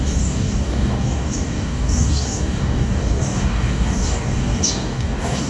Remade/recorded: remade